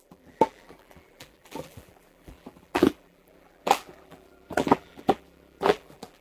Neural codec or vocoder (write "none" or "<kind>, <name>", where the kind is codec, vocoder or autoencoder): vocoder, BigVGAN v2